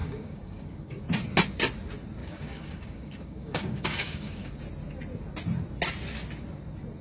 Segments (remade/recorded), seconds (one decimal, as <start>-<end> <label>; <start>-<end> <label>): 0.0-1.0 remade; 1.0-2.2 recorded; 2.2-4.6 remade; 4.6-7.0 recorded